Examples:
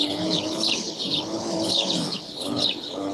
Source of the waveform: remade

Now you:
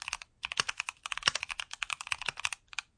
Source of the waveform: recorded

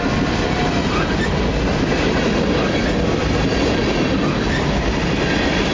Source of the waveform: recorded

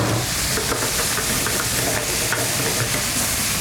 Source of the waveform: recorded